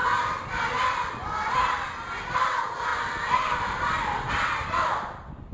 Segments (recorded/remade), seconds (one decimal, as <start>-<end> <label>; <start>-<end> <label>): 0.0-5.5 recorded